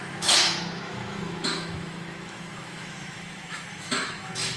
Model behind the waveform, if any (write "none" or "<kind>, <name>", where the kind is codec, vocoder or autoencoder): autoencoder, DAC-VAE